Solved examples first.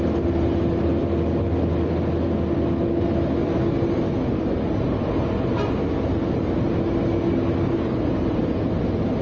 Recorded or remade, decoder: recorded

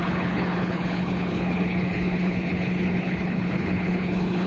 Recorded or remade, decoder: remade, codec, HILCodec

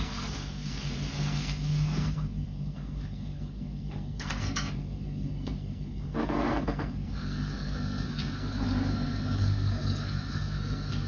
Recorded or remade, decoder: remade, codec, SNAC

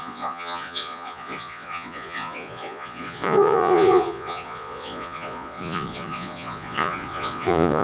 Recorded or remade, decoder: remade, vocoder, Vocos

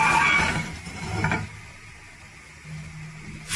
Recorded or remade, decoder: recorded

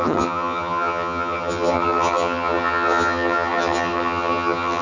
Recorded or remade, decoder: remade, vocoder, HiFi-GAN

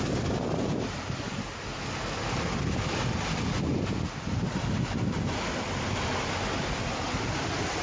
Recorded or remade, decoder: recorded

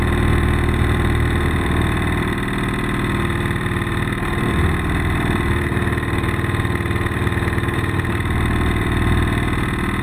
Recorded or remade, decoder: remade, vocoder, BigVGAN v2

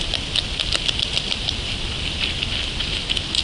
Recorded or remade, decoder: recorded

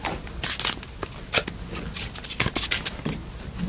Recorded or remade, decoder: recorded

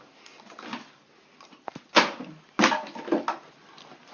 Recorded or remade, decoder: recorded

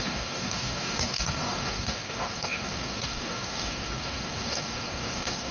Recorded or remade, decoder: remade, codec, DAC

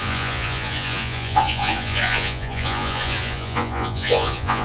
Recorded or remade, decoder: remade, vocoder, Vocos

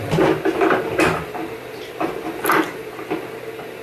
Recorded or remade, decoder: recorded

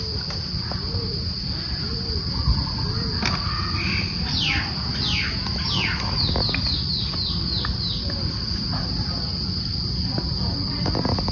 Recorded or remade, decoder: recorded